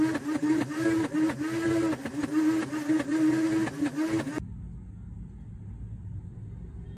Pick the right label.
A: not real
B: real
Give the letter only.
B